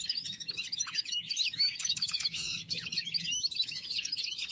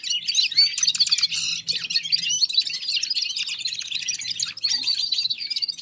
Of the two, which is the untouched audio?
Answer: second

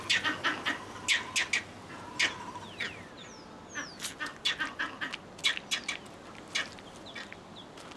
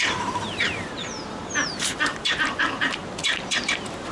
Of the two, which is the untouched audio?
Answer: first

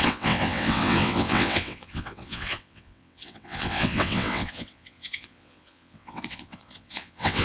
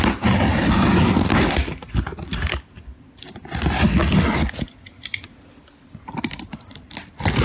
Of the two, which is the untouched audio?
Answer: second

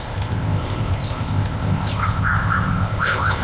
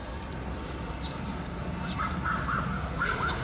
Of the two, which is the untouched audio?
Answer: second